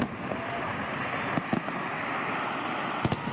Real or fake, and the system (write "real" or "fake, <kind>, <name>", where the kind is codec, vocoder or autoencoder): real